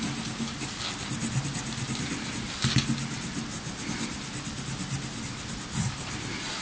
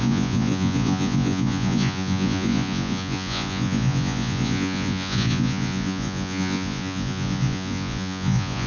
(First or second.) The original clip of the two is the first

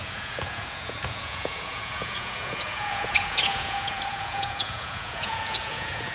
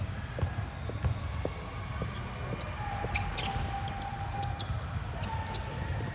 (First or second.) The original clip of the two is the second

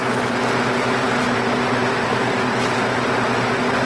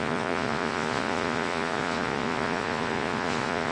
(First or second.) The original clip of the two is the first